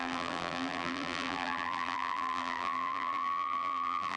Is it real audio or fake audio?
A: fake